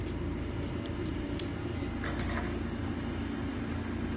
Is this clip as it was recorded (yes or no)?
yes